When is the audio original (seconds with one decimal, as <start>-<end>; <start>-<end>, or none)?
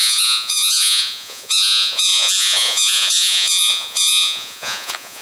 none